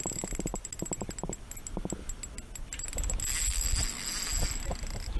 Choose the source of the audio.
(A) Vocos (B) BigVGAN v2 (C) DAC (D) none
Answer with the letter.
D